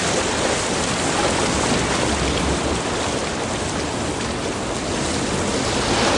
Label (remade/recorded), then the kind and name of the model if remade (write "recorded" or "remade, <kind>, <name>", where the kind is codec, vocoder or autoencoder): recorded